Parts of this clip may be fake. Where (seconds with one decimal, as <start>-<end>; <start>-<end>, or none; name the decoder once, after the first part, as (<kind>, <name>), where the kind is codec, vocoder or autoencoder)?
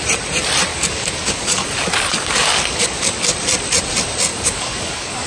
0.7-3.2 (codec, DAC); 4.3-5.3